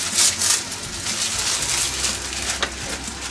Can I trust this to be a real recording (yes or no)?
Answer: yes